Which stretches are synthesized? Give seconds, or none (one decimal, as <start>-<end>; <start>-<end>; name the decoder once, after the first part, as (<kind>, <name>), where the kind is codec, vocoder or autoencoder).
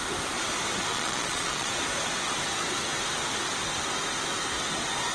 0.9-1.7 (vocoder, Vocos)